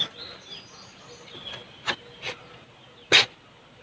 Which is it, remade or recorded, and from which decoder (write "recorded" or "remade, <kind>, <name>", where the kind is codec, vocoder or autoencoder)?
recorded